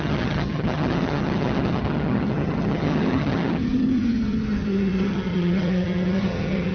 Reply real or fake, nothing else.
fake